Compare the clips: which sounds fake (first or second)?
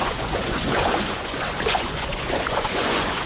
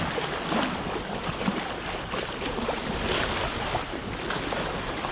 first